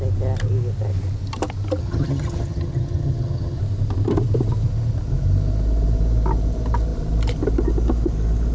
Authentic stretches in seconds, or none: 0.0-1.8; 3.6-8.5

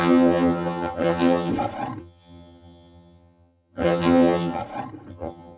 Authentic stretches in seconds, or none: 1.5-2.0; 4.6-5.1

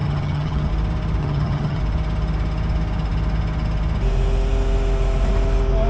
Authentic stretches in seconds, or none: 0.7-1.2; 1.8-5.9

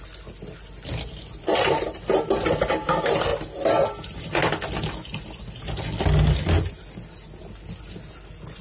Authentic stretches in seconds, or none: 0.0-8.6

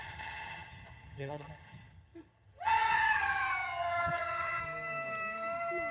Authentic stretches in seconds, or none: 4.6-5.9